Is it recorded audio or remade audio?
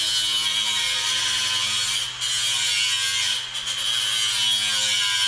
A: recorded